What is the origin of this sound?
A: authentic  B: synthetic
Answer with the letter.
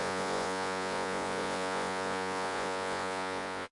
B